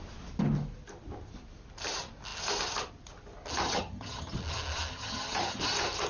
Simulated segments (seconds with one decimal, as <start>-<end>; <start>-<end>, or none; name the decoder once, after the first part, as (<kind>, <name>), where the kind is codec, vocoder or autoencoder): 3.6-4.4 (vocoder, HiFi-GAN); 4.9-5.6